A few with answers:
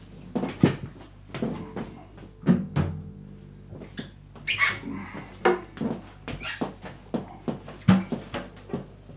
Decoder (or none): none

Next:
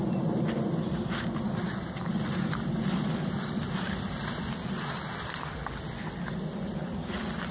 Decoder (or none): none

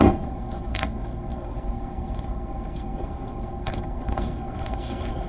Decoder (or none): codec, SNAC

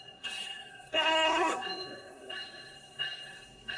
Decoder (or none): codec, SNAC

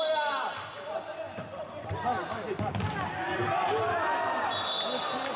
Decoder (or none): none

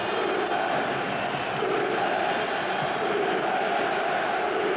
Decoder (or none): none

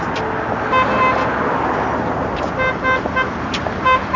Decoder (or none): none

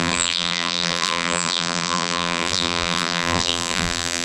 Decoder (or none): vocoder, BigVGAN v2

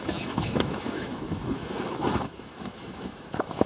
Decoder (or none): autoencoder, DAC-VAE